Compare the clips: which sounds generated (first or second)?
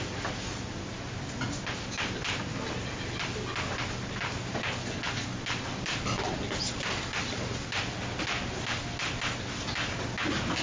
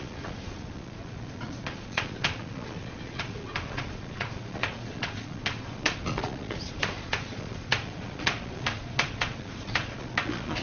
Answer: second